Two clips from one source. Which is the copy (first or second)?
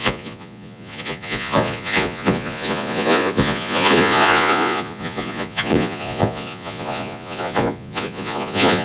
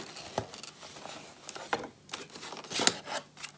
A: first